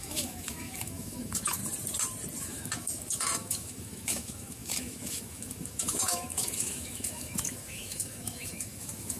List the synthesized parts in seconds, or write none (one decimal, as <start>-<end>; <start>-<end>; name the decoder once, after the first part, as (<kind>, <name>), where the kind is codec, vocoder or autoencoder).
0.0-1.6 (autoencoder, DAC-VAE); 2.4-9.2